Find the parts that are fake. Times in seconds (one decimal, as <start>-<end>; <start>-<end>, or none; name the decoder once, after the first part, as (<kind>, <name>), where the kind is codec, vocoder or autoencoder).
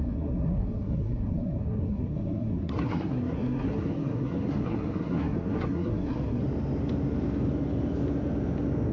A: 0.0-6.4 (codec, SNAC)